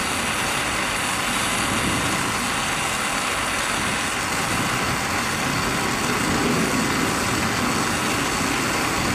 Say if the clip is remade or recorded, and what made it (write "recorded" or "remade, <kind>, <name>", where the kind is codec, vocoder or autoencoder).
recorded